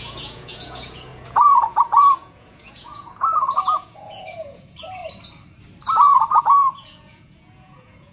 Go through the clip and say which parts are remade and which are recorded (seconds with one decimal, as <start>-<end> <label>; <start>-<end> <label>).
0.0-5.0 remade; 5.0-6.4 recorded; 6.4-8.1 remade